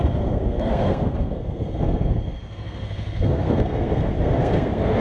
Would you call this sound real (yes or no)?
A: no